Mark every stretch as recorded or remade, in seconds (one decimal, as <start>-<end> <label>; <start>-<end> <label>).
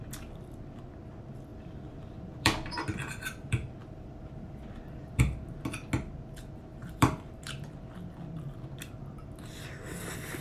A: 0.0-1.5 recorded; 1.5-5.2 remade; 5.2-6.7 recorded; 6.7-7.7 remade; 7.7-10.4 recorded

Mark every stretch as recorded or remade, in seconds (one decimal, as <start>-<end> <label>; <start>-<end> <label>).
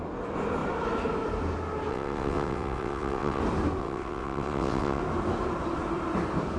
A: 0.0-1.9 recorded; 1.9-3.4 remade; 3.4-3.8 recorded; 3.8-5.0 remade; 5.0-6.6 recorded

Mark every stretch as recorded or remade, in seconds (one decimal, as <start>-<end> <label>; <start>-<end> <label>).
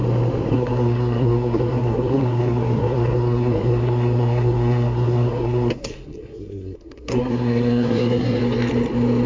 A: 0.0-0.5 recorded; 0.5-8.4 remade; 8.4-9.3 recorded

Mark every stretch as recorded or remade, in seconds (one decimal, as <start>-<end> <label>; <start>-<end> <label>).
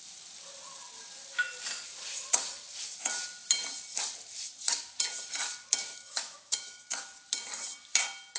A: 0.0-5.8 recorded; 5.8-6.9 remade; 6.9-8.4 recorded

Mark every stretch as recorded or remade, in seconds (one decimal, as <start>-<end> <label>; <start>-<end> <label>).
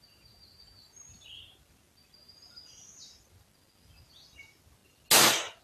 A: 0.0-5.6 recorded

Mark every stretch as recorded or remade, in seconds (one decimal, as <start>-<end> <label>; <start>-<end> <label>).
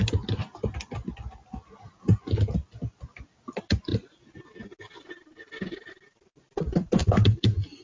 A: 0.0-7.8 recorded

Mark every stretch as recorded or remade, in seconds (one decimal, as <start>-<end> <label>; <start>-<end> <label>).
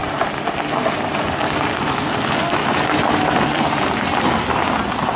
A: 0.0-5.2 recorded